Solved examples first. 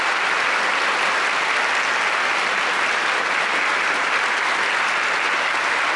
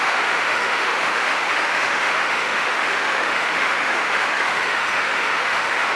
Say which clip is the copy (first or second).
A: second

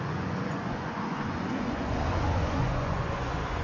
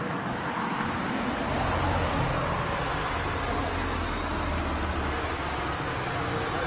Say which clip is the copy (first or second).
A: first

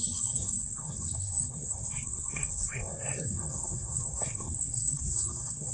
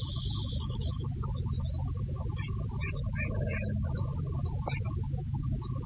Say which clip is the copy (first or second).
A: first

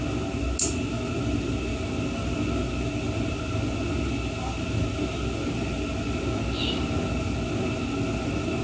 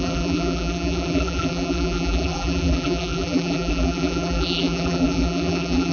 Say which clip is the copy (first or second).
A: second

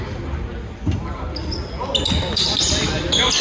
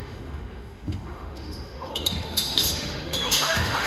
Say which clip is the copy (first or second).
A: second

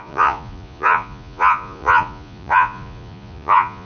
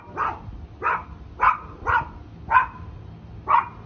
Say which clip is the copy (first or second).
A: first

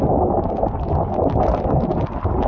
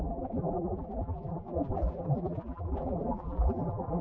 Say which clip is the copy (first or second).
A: second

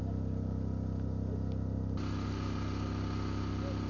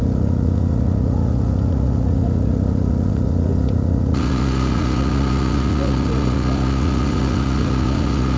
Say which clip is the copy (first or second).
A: second